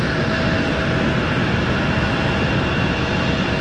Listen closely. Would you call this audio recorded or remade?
recorded